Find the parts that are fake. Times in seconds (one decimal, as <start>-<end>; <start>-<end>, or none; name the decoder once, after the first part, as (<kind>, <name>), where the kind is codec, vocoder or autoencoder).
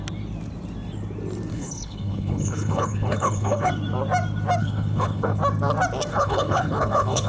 1.5-3.7 (codec, HILCodec); 4.6-5.4; 6.1-7.3